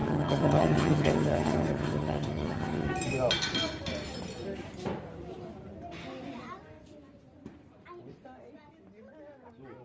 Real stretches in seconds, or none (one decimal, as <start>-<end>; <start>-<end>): 2.9-9.8